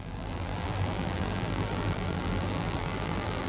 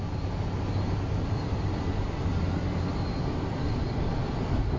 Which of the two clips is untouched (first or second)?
second